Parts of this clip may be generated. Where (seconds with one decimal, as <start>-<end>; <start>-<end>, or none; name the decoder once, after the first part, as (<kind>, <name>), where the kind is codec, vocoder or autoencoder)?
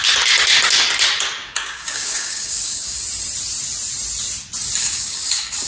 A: 1.4-3.0 (codec, DAC); 4.8-5.7